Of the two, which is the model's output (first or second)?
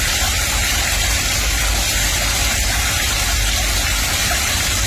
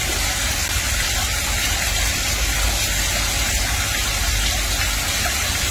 first